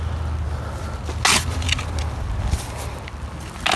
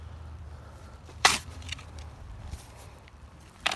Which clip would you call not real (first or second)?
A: second